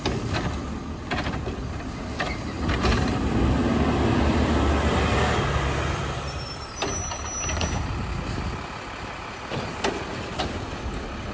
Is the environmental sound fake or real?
real